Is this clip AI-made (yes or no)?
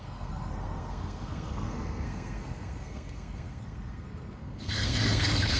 yes